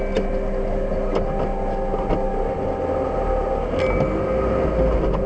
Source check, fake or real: real